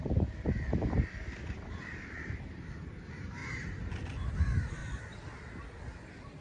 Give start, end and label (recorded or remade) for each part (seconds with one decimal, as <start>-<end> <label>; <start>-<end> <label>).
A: 0.0-3.4 remade; 3.4-4.3 recorded; 4.3-4.8 remade; 4.8-6.4 recorded